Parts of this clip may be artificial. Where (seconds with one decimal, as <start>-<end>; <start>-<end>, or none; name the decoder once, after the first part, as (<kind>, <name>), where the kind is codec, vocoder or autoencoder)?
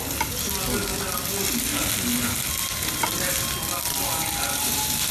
none